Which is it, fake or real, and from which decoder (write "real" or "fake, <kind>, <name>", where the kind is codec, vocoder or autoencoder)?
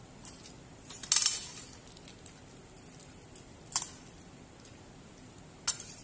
real